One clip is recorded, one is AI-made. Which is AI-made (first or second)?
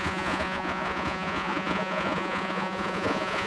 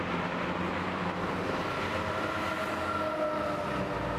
first